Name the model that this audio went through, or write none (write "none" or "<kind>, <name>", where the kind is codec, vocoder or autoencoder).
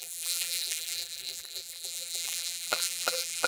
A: vocoder, BigVGAN v2